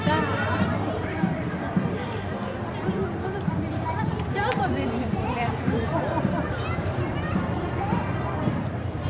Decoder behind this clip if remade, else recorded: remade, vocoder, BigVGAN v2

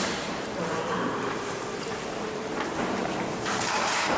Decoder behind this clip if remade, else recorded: remade, vocoder, BigVGAN v2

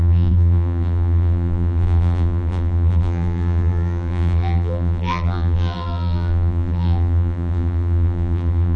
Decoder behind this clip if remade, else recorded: remade, vocoder, BigVGAN v2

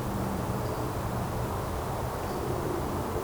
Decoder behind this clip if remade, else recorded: remade, vocoder, BigVGAN v2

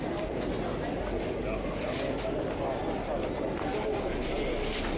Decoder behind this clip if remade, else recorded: recorded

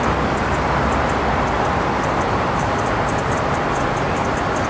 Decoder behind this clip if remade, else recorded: remade, vocoder, BigVGAN v2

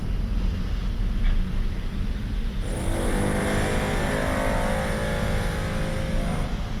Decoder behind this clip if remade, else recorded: recorded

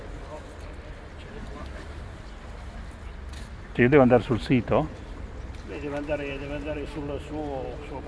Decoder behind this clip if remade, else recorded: recorded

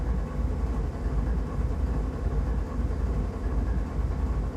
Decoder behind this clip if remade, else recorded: recorded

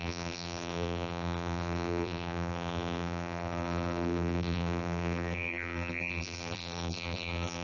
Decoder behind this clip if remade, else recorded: remade, vocoder, BigVGAN v2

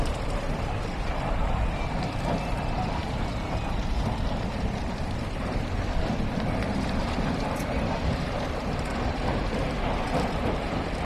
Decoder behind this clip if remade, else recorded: remade, vocoder, BigVGAN v2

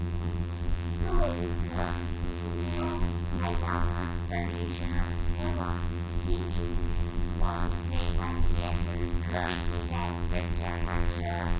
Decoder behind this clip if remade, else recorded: remade, vocoder, BigVGAN v2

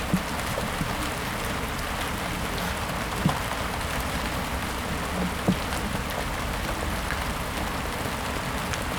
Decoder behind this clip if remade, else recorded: recorded